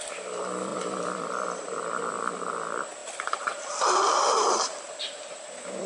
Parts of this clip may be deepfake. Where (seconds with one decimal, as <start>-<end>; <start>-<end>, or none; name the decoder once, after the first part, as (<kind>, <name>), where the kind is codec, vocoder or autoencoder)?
0.7-2.0 (vocoder, BigVGAN v2); 3.0-3.7